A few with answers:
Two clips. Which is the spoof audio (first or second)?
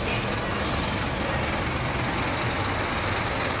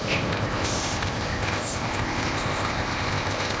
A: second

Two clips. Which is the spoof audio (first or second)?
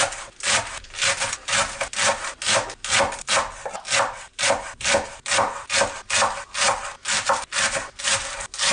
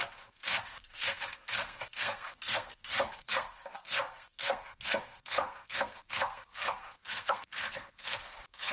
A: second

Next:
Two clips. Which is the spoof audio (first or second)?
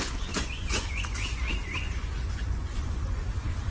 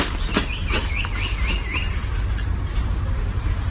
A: first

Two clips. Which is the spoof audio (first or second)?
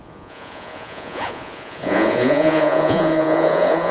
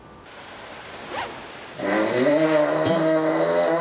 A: first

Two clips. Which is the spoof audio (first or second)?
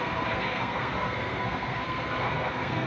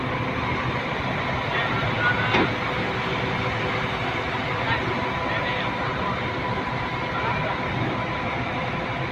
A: first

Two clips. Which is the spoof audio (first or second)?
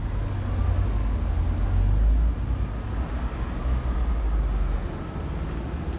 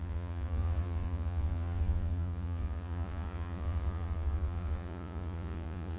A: second